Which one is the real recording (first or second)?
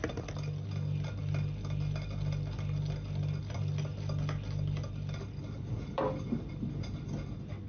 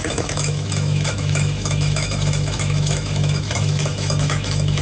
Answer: first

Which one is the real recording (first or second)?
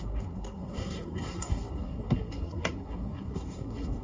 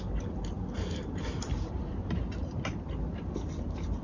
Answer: second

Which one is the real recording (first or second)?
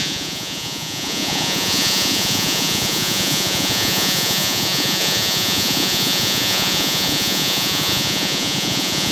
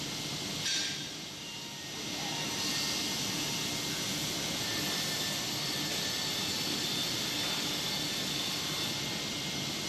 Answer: second